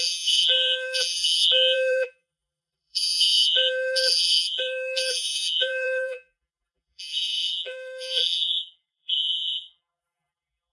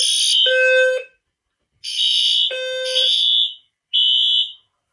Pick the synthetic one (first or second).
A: first